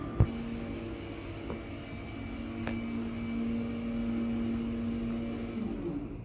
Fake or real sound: real